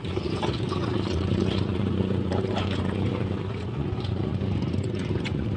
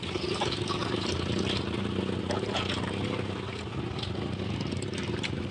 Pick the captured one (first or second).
second